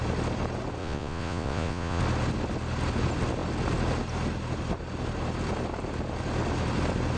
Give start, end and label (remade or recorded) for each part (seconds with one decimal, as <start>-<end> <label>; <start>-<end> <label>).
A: 0.0-0.8 recorded; 0.8-2.0 remade; 2.0-7.2 recorded